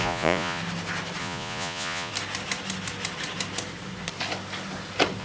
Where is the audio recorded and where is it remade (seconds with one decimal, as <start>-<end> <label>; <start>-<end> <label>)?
0.0-0.6 remade; 0.6-1.2 recorded; 1.2-2.1 remade; 2.1-5.2 recorded

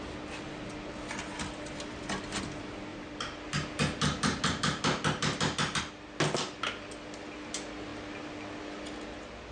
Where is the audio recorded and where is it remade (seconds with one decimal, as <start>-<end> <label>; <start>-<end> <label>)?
0.0-9.5 recorded

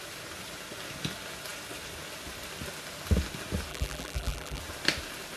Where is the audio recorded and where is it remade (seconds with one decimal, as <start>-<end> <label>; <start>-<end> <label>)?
0.0-3.7 recorded; 3.7-4.6 remade; 4.6-5.4 recorded

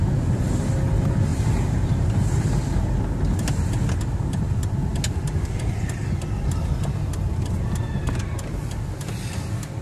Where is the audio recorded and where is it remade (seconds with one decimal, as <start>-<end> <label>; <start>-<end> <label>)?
0.0-1.3 recorded; 1.3-2.5 remade; 2.5-9.8 recorded